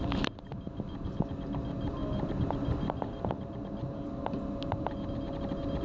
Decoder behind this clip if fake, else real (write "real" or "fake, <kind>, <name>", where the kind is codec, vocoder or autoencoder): real